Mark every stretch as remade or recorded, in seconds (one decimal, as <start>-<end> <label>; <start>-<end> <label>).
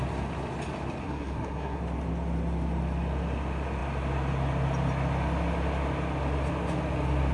0.0-1.0 recorded; 1.0-1.8 remade; 1.8-7.3 recorded